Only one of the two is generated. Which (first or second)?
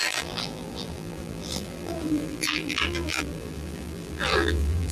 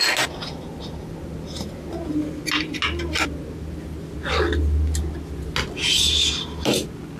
first